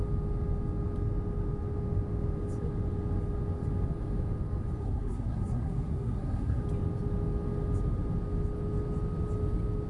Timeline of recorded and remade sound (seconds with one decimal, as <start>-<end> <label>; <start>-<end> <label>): 0.0-4.8 recorded; 4.8-6.6 remade; 6.6-9.9 recorded